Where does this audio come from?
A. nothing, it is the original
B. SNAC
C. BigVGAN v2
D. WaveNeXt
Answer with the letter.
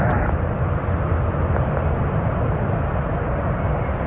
A